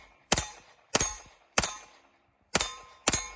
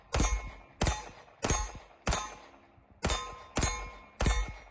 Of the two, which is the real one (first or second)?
second